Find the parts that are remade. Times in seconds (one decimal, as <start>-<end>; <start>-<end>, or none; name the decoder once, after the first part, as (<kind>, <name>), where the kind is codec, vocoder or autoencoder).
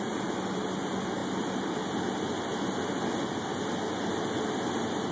none